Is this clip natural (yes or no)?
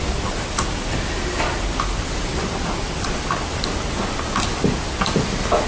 yes